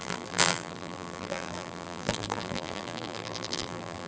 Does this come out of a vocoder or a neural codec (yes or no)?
yes